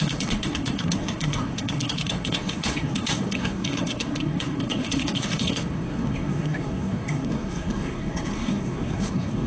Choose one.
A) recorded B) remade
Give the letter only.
B